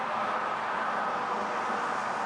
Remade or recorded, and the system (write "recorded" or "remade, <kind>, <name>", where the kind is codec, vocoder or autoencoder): recorded